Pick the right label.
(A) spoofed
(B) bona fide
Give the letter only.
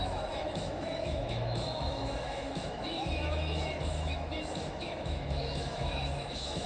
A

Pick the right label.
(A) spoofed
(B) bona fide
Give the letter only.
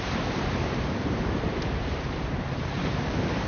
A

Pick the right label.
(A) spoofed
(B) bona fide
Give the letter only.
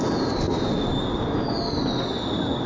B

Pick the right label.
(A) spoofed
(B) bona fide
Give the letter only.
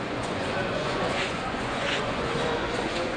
A